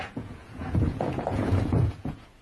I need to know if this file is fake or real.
fake